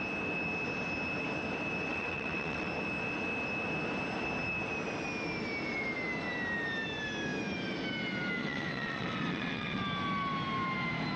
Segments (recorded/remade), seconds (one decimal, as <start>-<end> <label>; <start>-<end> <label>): 0.0-1.9 recorded; 1.9-2.7 remade; 2.7-8.4 recorded; 8.4-9.8 remade; 9.8-11.2 recorded